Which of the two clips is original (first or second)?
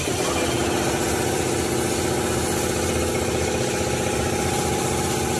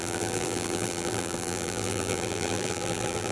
first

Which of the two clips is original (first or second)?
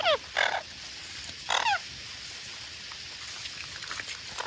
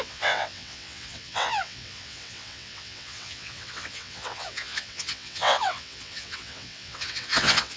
first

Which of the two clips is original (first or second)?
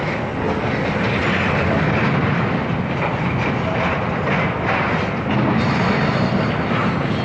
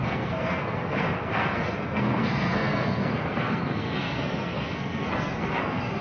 first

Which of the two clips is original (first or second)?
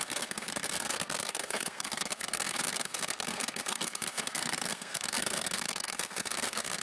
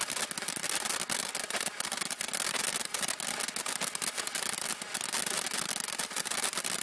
second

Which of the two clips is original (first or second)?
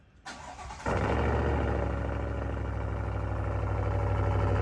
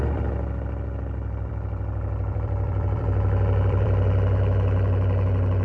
first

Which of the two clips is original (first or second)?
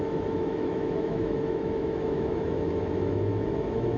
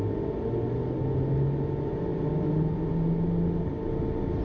second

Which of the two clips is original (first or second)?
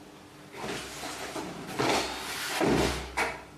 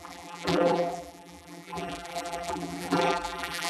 first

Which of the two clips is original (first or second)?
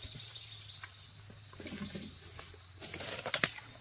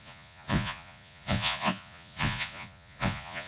first